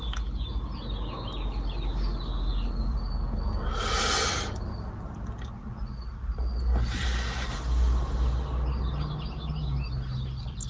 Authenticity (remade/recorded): recorded